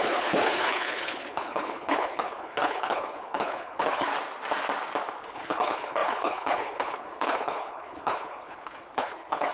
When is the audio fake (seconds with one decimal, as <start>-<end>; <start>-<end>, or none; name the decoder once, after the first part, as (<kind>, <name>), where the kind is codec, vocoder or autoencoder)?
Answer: 0.0-4.1 (codec, HILCodec); 5.2-9.5